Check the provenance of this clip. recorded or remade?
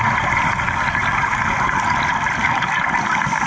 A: recorded